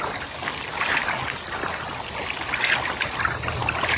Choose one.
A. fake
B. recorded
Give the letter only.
B